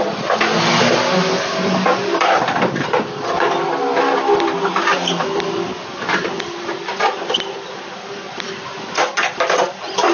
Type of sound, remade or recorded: recorded